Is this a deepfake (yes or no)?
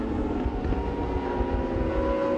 no